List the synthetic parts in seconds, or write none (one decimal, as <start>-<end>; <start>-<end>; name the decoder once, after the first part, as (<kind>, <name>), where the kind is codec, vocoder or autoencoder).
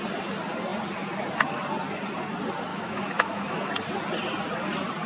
2.7-3.7 (autoencoder, DAC-VAE)